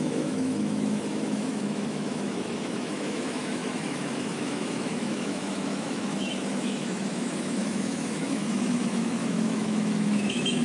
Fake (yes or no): yes